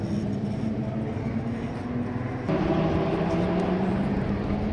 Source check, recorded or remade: recorded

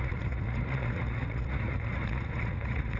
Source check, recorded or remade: remade